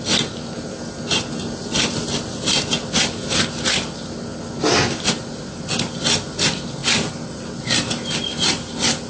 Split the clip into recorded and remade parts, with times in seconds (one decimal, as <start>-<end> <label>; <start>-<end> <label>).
0.0-9.1 recorded